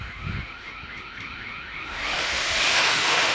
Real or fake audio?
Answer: fake